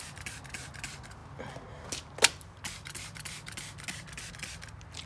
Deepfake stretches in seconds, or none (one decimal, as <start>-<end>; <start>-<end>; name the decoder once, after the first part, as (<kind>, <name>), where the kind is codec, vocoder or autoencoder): none